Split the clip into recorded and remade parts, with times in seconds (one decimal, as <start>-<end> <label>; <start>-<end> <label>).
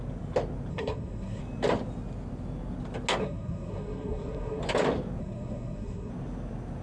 0.0-0.7 recorded; 0.7-1.4 remade; 1.4-3.2 recorded; 3.2-4.6 remade; 4.6-5.2 recorded; 5.2-6.1 remade; 6.1-6.8 recorded